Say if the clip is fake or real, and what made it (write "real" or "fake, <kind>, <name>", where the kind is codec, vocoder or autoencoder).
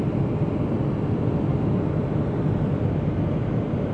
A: real